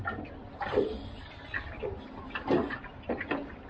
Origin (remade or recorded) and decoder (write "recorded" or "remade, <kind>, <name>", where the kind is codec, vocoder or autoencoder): recorded